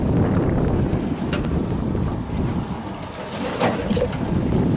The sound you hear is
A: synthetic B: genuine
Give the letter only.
B